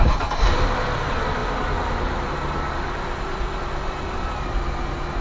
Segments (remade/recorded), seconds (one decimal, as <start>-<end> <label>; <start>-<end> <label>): 0.0-5.2 recorded